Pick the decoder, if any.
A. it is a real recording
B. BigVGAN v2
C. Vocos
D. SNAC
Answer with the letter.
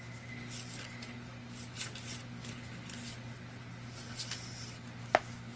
A